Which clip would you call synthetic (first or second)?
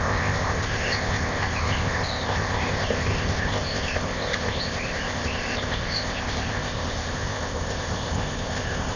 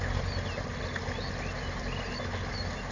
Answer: first